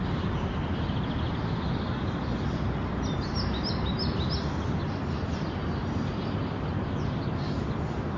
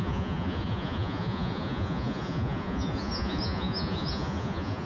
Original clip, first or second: first